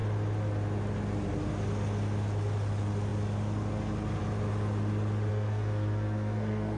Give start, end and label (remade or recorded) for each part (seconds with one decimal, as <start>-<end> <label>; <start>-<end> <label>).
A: 0.0-5.3 recorded; 5.3-6.8 remade